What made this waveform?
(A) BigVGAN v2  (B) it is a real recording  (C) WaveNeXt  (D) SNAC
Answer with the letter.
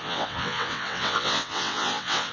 C